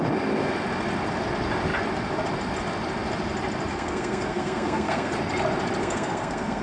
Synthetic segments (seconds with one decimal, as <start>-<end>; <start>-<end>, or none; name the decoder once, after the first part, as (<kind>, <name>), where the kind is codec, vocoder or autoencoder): 3.7-5.1 (codec, SNAC); 5.8-6.6